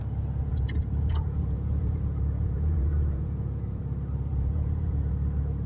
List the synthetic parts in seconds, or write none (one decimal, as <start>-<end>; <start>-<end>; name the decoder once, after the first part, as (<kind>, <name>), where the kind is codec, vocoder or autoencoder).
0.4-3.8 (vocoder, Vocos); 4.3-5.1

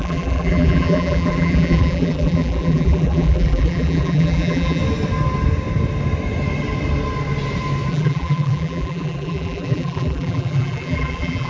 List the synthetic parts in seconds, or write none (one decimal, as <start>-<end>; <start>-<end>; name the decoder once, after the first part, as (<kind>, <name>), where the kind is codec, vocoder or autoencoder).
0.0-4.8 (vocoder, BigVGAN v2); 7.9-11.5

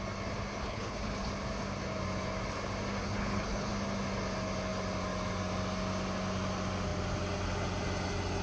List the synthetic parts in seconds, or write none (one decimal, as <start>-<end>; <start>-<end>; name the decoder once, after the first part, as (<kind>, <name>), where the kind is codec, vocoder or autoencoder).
0.6-1.3 (codec, HILCodec); 3.0-3.7

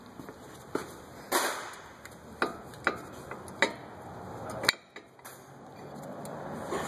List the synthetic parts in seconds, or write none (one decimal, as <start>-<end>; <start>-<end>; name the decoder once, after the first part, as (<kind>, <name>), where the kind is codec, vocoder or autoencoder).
none